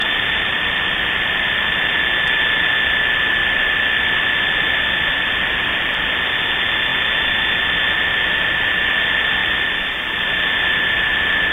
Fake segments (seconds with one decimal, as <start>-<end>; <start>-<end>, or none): 0.0-2.0; 9.4-10.0